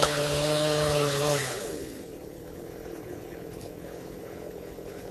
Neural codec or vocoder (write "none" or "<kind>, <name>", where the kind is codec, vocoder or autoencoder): codec, HILCodec